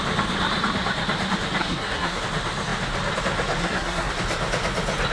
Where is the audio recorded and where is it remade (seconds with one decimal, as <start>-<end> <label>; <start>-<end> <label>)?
0.0-1.6 recorded; 1.6-2.2 remade; 2.2-3.6 recorded; 3.6-4.1 remade; 4.1-5.1 recorded